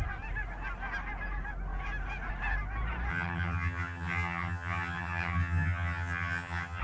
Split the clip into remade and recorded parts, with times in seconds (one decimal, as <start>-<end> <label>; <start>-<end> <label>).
0.0-3.1 recorded; 3.1-6.8 remade